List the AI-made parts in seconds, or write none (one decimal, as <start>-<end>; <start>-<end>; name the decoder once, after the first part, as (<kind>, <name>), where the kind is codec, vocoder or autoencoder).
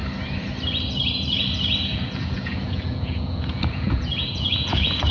1.9-5.1 (vocoder, Vocos)